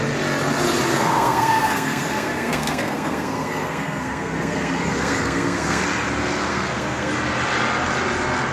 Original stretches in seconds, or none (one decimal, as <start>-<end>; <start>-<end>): 0.0-0.9; 5.8-6.5; 7.1-8.5